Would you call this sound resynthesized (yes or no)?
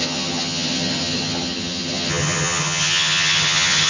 yes